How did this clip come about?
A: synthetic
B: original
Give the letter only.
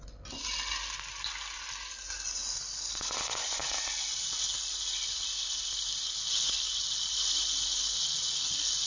B